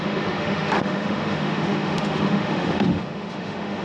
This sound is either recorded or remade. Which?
remade